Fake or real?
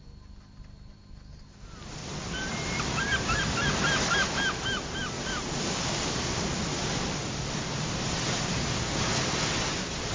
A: real